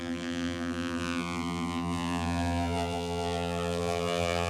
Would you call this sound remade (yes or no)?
yes